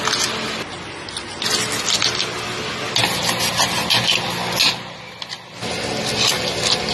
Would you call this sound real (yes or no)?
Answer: yes